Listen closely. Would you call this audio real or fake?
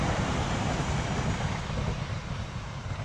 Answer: real